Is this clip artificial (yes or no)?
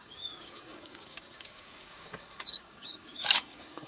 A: yes